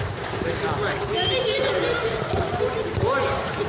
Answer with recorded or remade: recorded